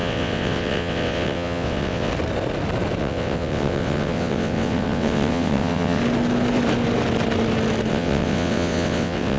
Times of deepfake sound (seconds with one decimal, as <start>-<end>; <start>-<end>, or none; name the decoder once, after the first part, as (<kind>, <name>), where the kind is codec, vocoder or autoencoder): 0.0-2.1 (vocoder, WaveNeXt); 3.0-6.0; 7.9-9.4